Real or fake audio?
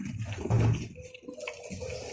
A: real